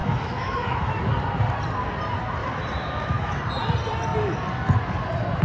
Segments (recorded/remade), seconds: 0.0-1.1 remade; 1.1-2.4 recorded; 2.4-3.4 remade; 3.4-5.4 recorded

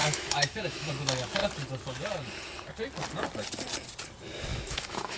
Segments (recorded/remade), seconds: 0.0-0.9 remade; 0.9-4.5 recorded; 4.5-5.2 remade